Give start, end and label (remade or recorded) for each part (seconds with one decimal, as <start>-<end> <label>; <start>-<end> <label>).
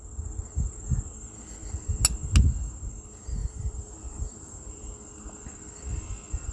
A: 0.0-3.4 recorded; 3.4-4.9 remade; 4.9-6.5 recorded